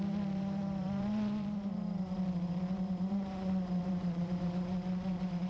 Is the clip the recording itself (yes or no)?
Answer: no